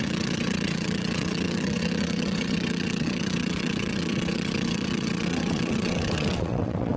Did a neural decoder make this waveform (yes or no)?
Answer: yes